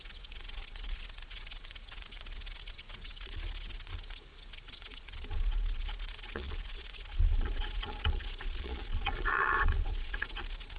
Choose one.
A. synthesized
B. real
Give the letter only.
A